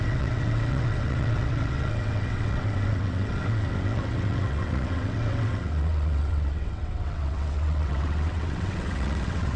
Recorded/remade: remade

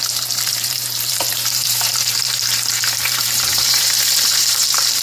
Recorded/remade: remade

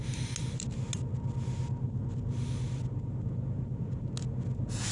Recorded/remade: recorded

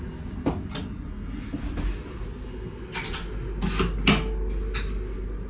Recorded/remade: recorded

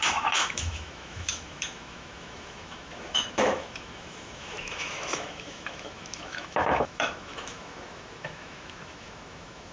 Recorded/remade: remade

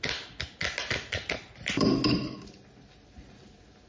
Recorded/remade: recorded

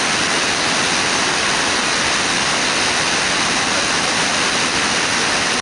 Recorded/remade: recorded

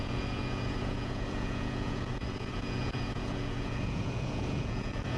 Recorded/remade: remade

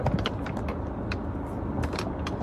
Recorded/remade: remade